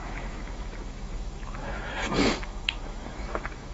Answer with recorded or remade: remade